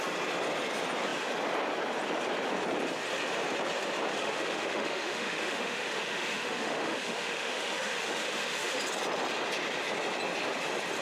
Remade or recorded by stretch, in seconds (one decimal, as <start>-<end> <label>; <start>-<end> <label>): 0.0-4.1 recorded; 4.1-8.8 remade; 8.8-11.0 recorded